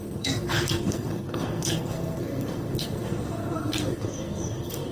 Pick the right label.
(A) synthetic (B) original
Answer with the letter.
A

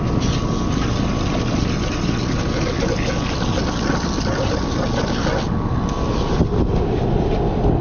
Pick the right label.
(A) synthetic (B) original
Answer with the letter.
B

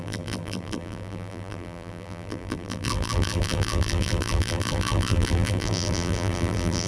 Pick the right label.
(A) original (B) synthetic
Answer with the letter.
B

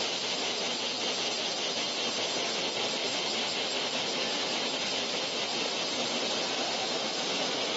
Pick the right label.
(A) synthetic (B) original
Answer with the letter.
B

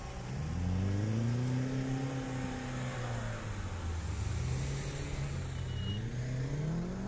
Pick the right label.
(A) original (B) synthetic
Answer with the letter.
A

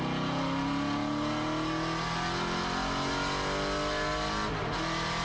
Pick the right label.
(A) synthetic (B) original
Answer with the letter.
B